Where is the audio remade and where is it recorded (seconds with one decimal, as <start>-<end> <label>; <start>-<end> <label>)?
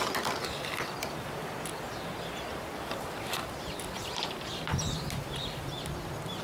0.0-2.5 recorded; 2.5-4.6 remade; 4.6-6.4 recorded